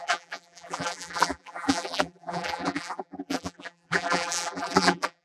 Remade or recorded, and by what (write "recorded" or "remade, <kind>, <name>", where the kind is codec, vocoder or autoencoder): remade, vocoder, BigVGAN v2